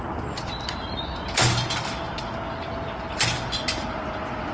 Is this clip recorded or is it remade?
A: recorded